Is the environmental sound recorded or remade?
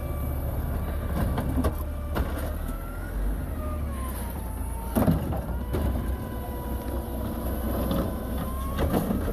recorded